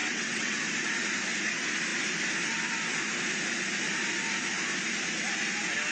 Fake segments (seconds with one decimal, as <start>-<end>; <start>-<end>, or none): 0.0-0.6